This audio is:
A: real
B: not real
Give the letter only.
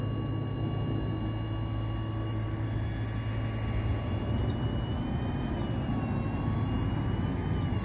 A